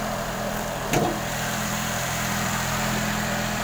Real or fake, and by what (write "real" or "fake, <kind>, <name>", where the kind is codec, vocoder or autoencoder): fake, vocoder, BigVGAN v2